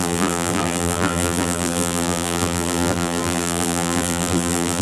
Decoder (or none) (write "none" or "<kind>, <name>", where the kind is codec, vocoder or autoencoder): vocoder, BigVGAN v2